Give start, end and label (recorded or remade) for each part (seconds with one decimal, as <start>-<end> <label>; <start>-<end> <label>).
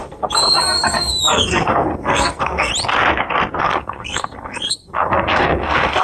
0.0-2.7 remade; 2.7-3.6 recorded; 3.6-6.0 remade